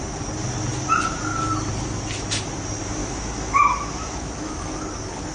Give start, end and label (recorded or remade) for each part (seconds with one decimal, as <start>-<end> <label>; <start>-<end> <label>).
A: 0.0-3.0 recorded; 3.0-4.8 remade; 4.8-5.3 recorded